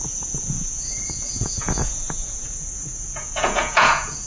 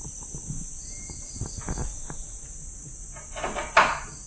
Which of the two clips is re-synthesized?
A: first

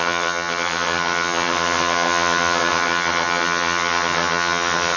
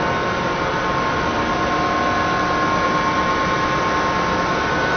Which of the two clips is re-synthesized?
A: first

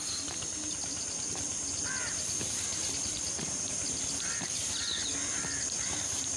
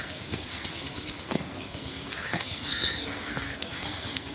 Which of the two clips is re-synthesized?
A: second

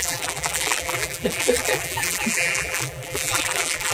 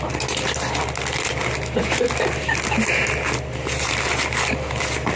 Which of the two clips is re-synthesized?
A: first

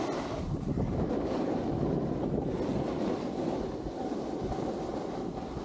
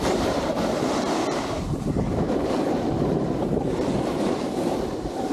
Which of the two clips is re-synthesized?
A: second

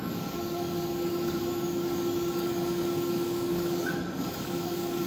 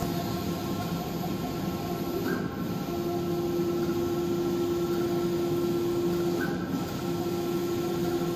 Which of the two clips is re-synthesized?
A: first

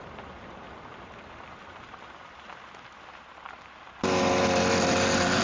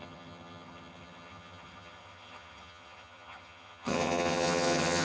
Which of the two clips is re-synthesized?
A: second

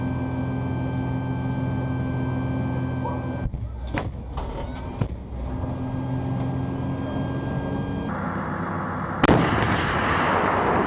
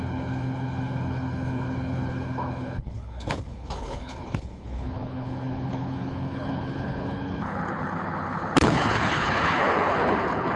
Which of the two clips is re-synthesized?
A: second